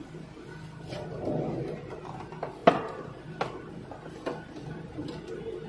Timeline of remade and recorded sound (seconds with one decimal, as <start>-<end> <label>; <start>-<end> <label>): 0.0-5.7 recorded